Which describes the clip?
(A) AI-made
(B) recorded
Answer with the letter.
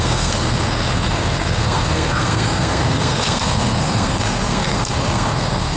A